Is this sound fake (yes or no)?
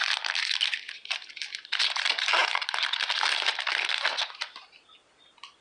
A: no